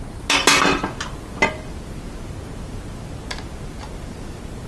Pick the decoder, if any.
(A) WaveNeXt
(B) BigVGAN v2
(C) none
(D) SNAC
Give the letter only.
C